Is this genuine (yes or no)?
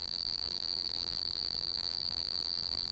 no